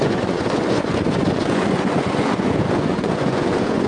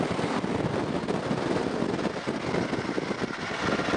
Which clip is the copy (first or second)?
first